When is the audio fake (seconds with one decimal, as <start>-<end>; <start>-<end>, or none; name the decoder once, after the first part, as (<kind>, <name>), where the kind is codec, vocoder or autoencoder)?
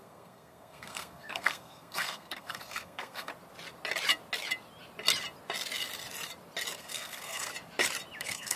0.0-3.3 (codec, SNAC); 6.8-7.5; 8.2-8.6